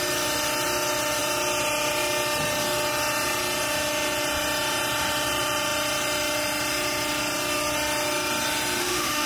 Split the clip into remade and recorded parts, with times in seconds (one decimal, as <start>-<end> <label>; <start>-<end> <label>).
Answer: 0.0-8.8 recorded; 8.8-9.3 remade